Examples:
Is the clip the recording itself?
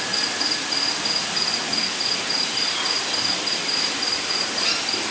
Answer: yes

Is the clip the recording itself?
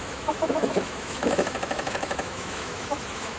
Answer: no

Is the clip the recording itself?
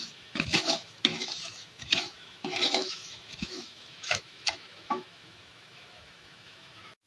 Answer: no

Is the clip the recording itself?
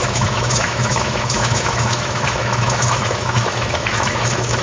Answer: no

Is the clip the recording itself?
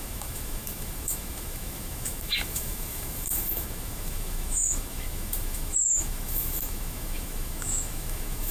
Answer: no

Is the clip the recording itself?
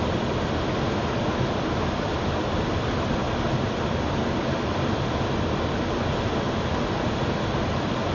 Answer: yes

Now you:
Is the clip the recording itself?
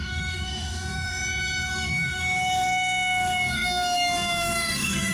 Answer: no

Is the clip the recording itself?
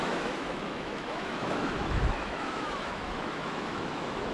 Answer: no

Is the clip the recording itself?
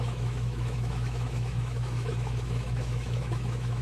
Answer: no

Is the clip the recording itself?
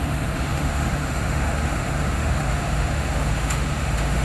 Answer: no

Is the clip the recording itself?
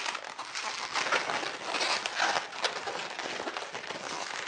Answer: yes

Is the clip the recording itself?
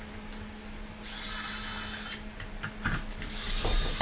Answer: yes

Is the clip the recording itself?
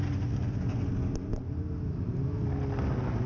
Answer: yes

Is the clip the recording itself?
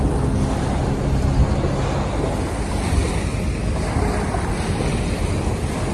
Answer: yes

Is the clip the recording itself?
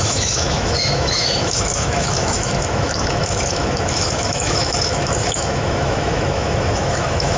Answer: no